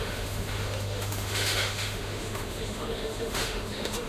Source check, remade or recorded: remade